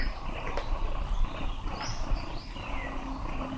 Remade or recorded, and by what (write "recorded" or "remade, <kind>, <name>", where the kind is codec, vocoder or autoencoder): recorded